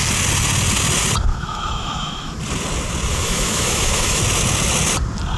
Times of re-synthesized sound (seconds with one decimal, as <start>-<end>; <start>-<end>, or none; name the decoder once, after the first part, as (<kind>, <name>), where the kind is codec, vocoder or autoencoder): 1.3-2.4 (autoencoder, DAC-VAE); 3.1-4.2